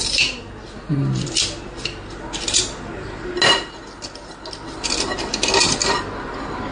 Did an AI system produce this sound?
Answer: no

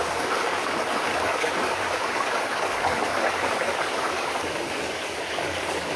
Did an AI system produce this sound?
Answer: yes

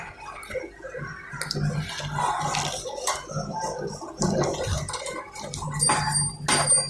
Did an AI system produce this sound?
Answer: no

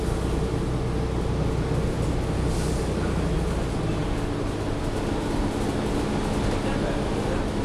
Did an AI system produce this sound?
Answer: no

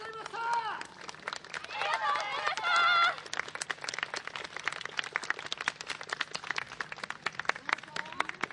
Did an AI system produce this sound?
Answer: no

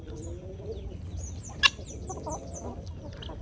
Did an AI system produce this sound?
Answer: no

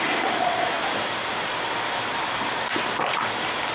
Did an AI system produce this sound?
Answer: no